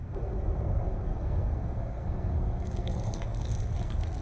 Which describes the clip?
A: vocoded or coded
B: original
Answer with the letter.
A